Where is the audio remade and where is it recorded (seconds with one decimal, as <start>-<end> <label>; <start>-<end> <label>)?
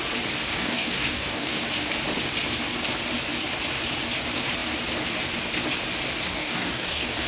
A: 0.0-0.5 recorded; 0.5-1.6 remade; 1.6-6.3 recorded; 6.3-7.3 remade